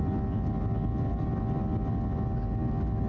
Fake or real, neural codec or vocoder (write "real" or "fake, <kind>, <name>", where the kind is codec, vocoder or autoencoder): real